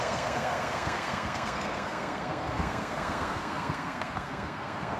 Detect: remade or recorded remade